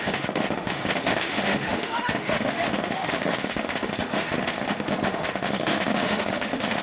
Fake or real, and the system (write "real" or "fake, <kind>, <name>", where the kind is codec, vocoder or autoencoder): fake, autoencoder, DAC-VAE